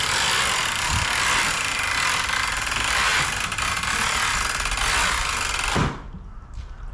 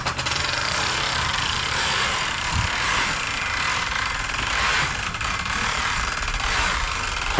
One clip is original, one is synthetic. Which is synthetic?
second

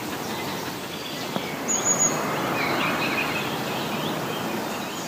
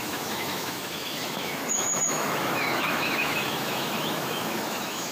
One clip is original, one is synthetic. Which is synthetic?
second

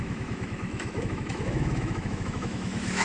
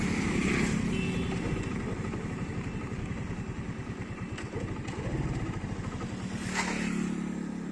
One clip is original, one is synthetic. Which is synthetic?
first